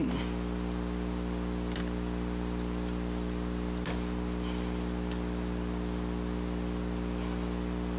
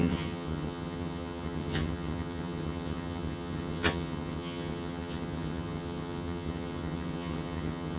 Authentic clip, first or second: first